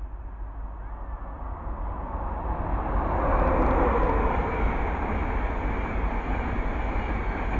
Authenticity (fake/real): real